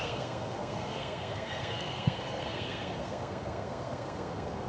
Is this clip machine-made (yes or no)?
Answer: yes